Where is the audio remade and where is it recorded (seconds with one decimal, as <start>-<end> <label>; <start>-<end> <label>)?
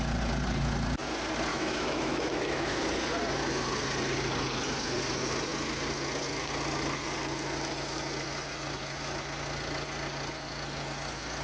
0.0-1.5 recorded; 1.5-2.8 remade; 2.8-11.4 recorded